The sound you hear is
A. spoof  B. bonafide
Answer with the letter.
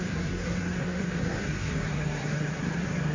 A